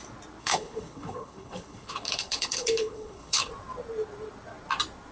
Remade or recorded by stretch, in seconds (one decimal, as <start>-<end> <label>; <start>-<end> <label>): 0.0-0.4 recorded; 0.4-3.5 remade; 3.5-5.1 recorded

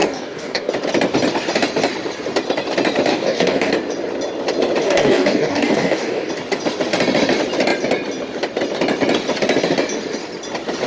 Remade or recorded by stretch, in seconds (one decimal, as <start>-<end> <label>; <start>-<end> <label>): 0.0-0.7 remade; 0.7-3.1 recorded; 3.1-3.7 remade; 3.7-4.8 recorded; 4.8-6.3 remade; 6.3-10.9 recorded

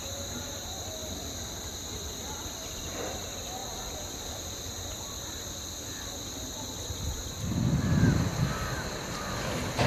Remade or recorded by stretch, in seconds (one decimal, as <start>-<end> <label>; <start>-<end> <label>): 0.0-1.0 recorded; 1.0-3.1 remade; 3.1-3.6 recorded; 3.6-4.8 remade; 4.8-9.9 recorded

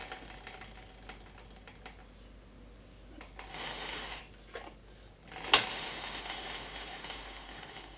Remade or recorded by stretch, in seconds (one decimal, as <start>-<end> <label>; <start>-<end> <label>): 0.0-3.5 recorded; 3.5-4.2 remade; 4.2-5.7 recorded; 5.7-8.0 remade

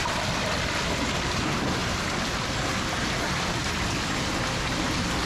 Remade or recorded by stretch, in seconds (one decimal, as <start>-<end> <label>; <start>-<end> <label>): 0.0-1.8 remade; 1.8-5.3 recorded

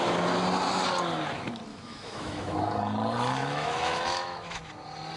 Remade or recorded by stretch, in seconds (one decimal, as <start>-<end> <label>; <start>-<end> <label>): 0.0-1.7 recorded; 1.7-2.6 remade; 2.6-3.4 recorded; 3.4-4.7 remade; 4.7-5.2 recorded